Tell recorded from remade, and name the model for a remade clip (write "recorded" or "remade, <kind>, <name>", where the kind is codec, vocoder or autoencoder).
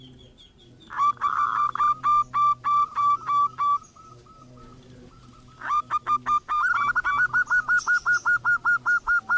recorded